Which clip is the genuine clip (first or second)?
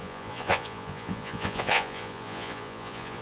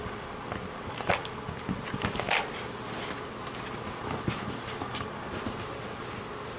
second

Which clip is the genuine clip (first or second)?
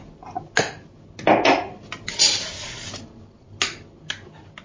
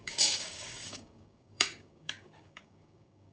first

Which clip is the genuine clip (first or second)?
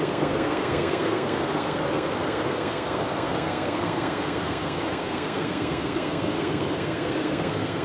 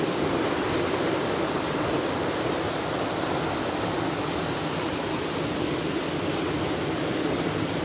second